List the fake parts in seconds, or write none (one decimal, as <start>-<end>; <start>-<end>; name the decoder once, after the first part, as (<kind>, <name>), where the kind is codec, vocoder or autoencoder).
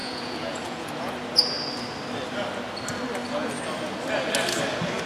0.0-1.1 (vocoder, Vocos)